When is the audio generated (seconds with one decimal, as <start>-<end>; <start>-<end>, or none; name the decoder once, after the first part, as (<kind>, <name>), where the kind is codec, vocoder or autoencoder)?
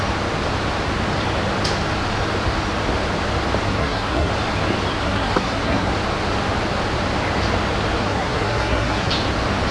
3.7-4.3 (codec, SNAC); 4.9-5.9; 8.0-9.1